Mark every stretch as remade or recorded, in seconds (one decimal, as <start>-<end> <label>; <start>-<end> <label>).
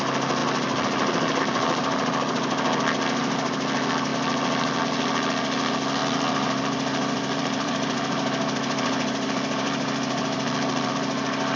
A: 0.0-6.0 recorded; 6.0-10.9 remade; 10.9-11.6 recorded